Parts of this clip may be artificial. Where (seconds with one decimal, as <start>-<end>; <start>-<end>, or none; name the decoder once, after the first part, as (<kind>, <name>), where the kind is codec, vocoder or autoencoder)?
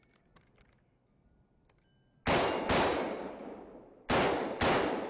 none